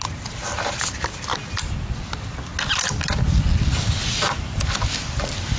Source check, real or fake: real